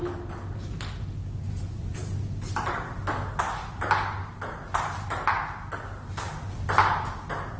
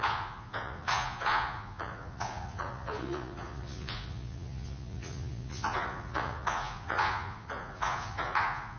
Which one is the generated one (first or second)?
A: second